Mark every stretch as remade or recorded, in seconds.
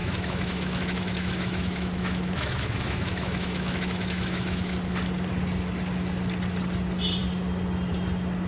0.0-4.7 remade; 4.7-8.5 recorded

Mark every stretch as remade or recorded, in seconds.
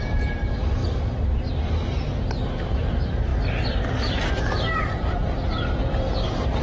0.0-0.8 remade; 0.8-1.5 recorded; 1.5-6.6 remade